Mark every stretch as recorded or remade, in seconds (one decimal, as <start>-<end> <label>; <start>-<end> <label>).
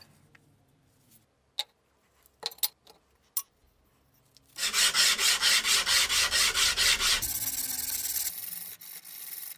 0.0-9.6 recorded